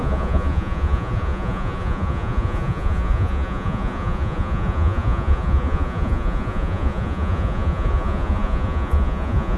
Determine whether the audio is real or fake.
fake